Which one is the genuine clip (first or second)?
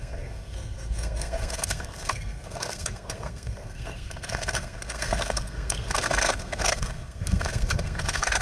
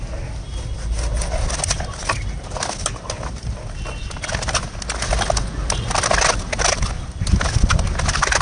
second